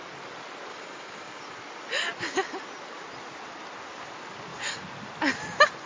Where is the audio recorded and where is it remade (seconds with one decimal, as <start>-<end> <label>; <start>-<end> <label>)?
0.0-0.7 recorded; 0.7-1.4 remade; 1.4-5.9 recorded